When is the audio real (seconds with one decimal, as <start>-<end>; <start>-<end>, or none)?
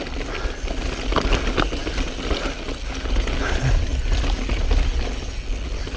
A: 0.0-6.0